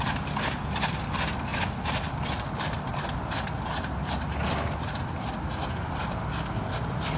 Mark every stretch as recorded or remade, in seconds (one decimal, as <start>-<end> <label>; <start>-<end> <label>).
0.0-7.2 recorded